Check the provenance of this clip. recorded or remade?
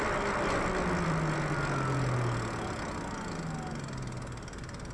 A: recorded